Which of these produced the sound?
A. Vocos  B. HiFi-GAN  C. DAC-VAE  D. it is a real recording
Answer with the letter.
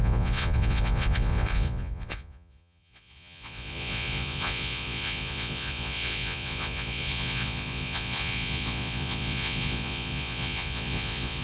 A